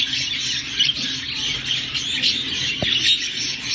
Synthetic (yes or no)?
no